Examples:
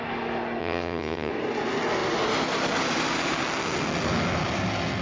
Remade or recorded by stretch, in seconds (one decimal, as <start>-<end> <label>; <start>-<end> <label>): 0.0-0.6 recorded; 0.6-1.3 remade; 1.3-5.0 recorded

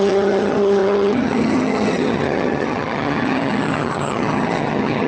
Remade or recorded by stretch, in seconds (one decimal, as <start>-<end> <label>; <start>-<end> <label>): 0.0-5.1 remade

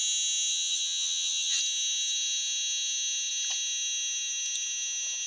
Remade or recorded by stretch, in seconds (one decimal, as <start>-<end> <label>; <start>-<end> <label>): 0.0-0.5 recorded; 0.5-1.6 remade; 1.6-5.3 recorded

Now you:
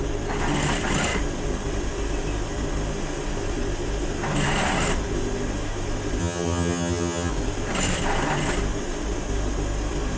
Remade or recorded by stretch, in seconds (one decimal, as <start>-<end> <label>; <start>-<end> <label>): 0.0-6.2 recorded; 6.2-7.3 remade; 7.3-10.2 recorded

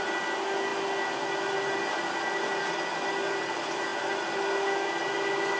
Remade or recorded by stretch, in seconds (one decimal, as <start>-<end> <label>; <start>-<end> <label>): 0.0-5.6 recorded

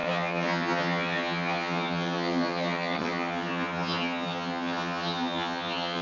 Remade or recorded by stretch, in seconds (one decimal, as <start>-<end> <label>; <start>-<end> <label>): 0.0-6.0 remade

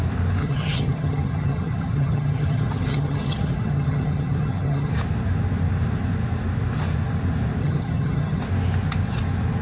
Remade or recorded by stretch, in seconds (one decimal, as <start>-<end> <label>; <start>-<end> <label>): 0.0-0.4 recorded; 0.4-4.9 remade; 4.9-7.6 recorded; 7.6-8.4 remade; 8.4-9.6 recorded

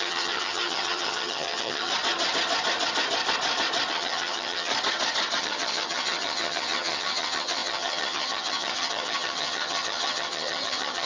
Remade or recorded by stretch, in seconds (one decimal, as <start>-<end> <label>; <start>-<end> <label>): 0.0-1.9 remade; 1.9-3.9 recorded; 3.9-4.7 remade; 4.7-5.4 recorded; 5.4-11.1 remade